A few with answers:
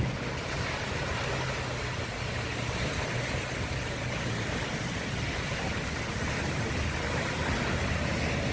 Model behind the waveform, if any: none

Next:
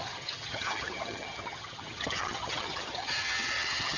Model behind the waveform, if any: vocoder, HiFi-GAN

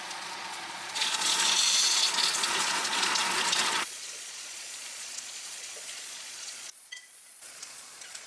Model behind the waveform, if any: vocoder, Vocos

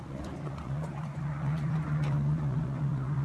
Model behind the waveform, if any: vocoder, Vocos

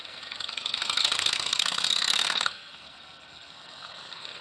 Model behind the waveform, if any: codec, SNAC